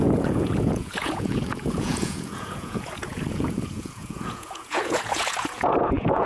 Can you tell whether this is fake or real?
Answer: fake